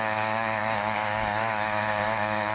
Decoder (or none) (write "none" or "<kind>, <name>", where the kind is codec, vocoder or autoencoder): codec, DAC